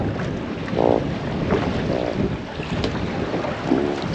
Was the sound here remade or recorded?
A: recorded